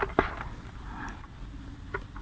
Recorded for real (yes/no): yes